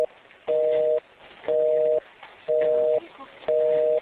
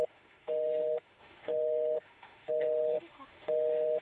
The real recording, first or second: first